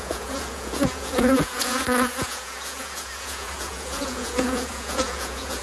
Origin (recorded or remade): remade